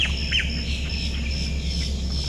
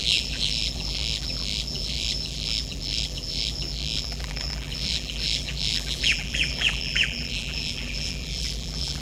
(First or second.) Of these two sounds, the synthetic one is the second